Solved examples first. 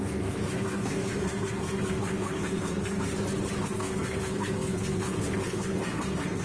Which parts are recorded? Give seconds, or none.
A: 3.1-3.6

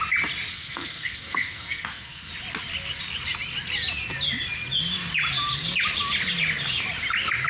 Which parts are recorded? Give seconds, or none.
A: 0.0-0.5; 2.3-7.5

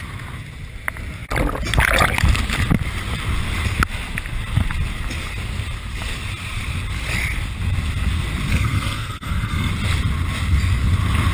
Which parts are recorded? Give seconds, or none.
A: 0.0-8.5; 9.7-11.3